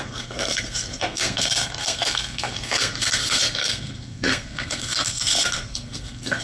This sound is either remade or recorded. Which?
remade